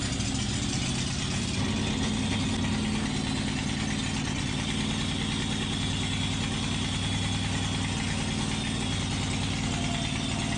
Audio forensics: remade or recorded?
recorded